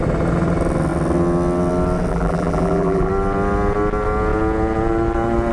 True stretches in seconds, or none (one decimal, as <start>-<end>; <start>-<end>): 0.0-2.1; 3.1-5.5